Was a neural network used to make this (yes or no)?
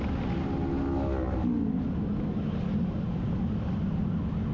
no